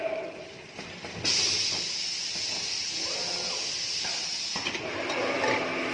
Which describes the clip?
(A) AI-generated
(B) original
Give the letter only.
B